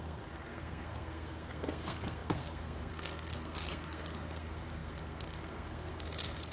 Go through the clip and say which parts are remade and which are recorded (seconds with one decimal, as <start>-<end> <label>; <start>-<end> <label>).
0.0-6.5 remade